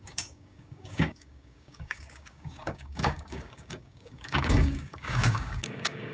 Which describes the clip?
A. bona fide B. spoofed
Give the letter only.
B